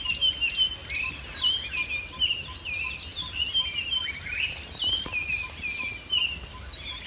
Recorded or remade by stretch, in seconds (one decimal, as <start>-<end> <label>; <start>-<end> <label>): 0.0-7.1 recorded